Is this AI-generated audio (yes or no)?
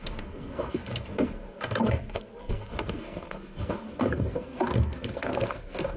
yes